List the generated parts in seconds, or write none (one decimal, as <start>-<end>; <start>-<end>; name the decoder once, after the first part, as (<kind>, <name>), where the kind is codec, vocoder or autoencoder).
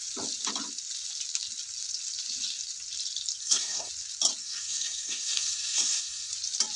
3.4-3.9 (codec, SNAC); 4.4-6.3